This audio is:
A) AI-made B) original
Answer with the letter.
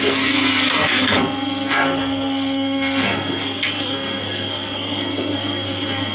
A